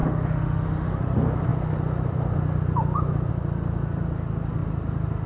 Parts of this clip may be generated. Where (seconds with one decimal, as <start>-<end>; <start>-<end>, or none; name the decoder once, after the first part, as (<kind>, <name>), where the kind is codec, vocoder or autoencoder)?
0.0-1.0 (autoencoder, DAC-VAE)